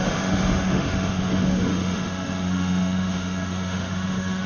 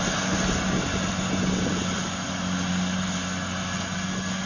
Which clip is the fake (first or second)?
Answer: first